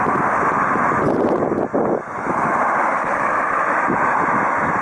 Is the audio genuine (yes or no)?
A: yes